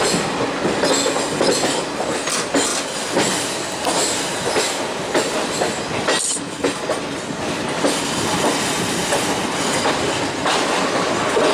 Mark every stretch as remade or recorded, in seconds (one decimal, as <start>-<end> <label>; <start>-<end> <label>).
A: 0.0-11.5 recorded